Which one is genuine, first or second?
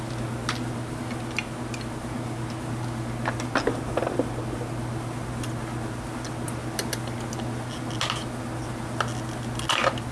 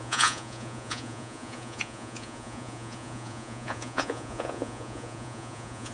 first